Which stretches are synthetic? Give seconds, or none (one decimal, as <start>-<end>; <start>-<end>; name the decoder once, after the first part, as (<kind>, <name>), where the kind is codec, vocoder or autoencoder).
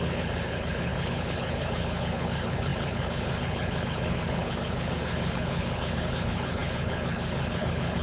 0.0-8.0 (codec, HILCodec)